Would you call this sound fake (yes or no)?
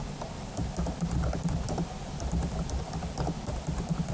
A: no